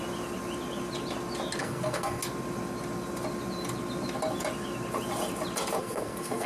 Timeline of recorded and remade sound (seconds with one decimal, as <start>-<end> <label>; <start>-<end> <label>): 0.0-1.6 recorded; 1.6-2.2 remade; 2.2-5.8 recorded; 5.8-6.5 remade